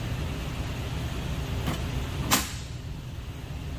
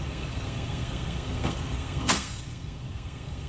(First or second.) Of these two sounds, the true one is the first